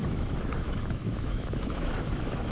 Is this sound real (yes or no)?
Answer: no